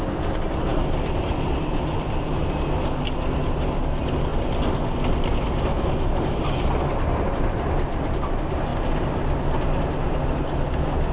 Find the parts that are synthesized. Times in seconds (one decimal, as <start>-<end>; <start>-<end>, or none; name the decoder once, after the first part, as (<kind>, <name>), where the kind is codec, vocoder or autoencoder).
none